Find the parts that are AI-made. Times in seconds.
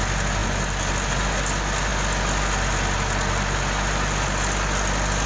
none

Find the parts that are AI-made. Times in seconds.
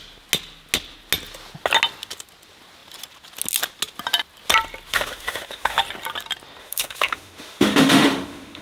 4.9-5.8 (autoencoder, DAC-VAE); 6.6-8.6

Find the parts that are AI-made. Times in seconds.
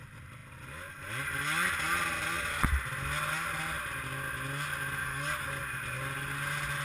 5.0-5.6 (codec, DAC)